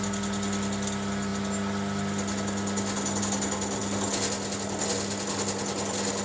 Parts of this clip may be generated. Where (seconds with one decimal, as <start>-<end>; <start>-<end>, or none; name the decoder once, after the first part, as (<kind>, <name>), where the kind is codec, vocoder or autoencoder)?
none